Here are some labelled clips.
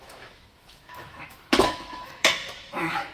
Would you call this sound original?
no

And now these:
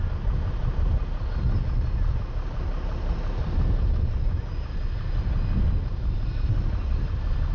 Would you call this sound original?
yes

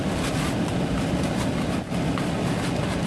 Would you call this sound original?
yes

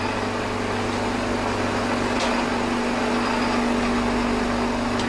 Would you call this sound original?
yes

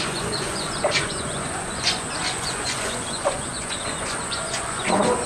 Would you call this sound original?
no